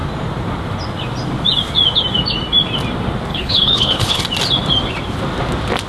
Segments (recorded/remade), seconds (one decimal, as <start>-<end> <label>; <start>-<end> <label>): 0.0-3.3 recorded; 3.3-4.2 remade; 4.2-5.9 recorded